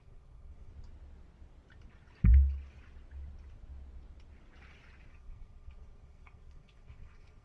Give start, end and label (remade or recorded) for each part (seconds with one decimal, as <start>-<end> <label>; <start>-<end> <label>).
0.0-0.7 remade; 0.7-5.1 recorded; 5.1-7.4 remade